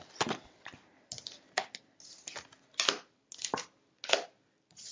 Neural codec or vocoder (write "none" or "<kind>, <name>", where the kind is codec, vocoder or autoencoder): none